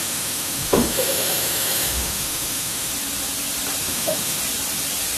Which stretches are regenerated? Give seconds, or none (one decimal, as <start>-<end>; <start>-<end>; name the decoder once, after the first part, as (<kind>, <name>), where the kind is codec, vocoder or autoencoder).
0.0-2.9 (autoencoder, DAC-VAE); 3.8-4.4